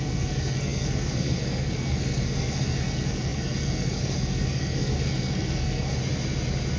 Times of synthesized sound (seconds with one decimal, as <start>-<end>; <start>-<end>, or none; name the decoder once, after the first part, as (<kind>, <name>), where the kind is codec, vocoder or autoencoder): 0.0-6.0 (codec, SNAC)